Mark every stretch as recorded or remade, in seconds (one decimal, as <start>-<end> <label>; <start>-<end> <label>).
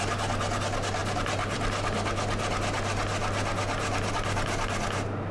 0.0-5.3 recorded